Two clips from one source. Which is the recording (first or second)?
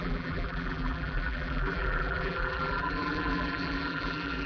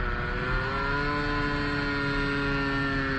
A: second